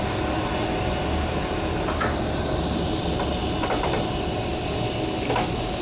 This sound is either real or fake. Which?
real